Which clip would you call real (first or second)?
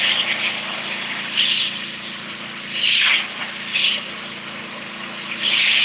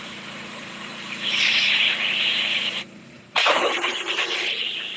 first